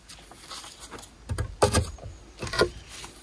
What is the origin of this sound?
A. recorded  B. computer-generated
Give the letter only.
A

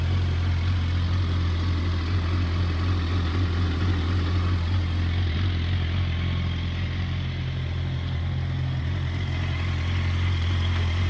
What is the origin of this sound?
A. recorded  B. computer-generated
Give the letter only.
A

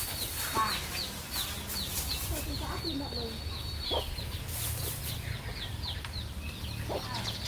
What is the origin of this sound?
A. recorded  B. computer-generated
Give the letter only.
A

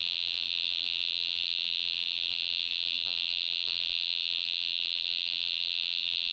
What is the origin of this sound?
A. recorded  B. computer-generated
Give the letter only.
B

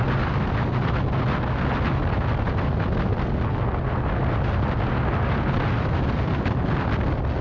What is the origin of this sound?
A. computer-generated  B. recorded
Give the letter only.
B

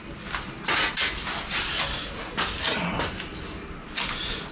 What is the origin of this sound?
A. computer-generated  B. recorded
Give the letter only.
B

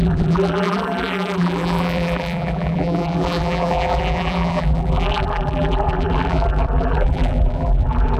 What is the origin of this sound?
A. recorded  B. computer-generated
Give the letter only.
B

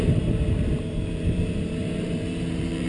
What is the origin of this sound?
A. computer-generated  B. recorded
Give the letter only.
A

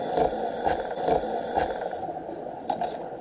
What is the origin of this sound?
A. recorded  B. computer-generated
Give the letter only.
A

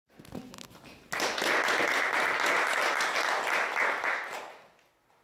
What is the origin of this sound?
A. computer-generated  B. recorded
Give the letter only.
B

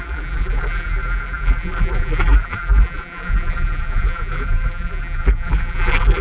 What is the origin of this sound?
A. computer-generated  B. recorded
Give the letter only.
A